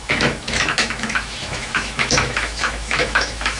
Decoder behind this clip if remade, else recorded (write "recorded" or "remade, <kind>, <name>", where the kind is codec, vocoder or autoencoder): remade, autoencoder, DAC-VAE